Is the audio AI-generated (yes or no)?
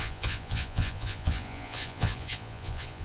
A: yes